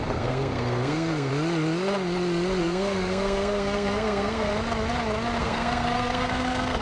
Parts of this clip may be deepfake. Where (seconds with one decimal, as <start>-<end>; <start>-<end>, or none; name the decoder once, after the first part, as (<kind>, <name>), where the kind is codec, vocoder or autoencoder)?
0.0-1.3 (codec, SNAC); 2.6-4.5; 5.4-6.8